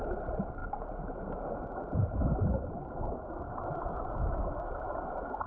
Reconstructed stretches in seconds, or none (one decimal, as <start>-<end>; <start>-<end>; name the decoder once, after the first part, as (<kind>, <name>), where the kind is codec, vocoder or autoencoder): none